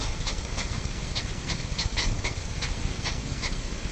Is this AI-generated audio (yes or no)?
yes